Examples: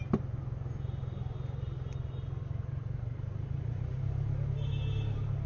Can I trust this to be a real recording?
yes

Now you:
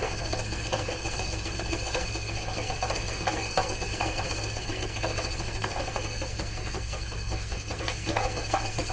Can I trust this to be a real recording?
no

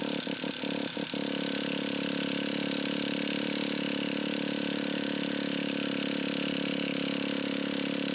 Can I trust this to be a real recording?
yes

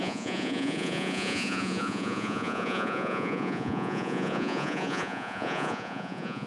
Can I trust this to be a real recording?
no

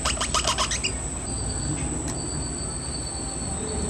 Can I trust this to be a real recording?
yes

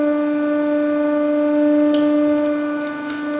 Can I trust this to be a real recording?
yes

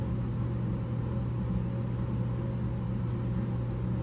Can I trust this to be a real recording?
yes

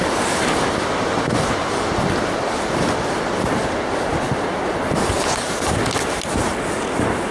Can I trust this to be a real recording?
yes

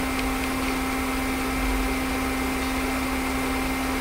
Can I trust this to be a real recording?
yes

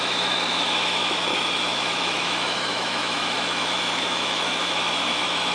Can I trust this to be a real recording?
no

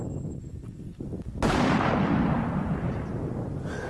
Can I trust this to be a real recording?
yes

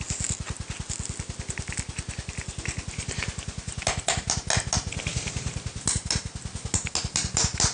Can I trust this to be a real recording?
yes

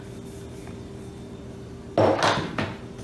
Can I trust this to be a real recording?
yes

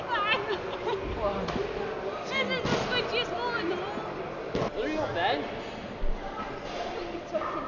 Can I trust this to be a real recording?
yes